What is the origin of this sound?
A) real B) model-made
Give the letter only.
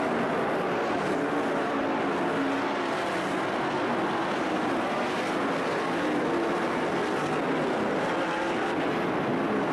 A